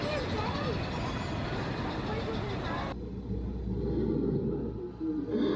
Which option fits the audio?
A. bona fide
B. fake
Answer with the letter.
A